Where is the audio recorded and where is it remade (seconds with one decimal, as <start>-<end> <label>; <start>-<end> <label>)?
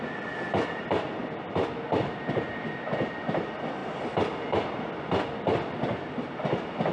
0.0-6.9 recorded